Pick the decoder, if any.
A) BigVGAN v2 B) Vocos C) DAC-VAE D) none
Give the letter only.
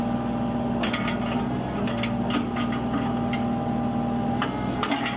D